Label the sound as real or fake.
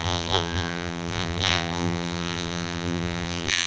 fake